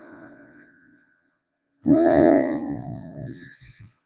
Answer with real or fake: fake